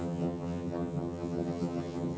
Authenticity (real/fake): fake